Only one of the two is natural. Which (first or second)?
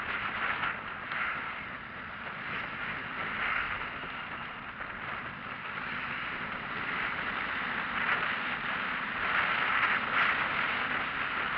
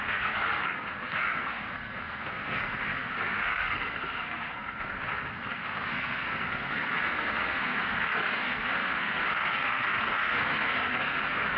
first